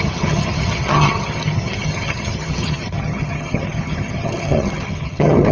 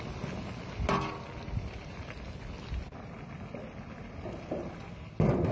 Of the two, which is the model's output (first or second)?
first